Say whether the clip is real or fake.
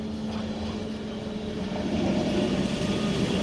real